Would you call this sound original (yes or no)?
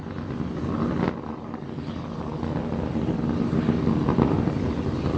yes